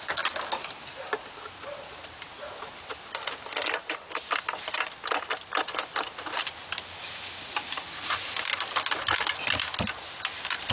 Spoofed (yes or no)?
no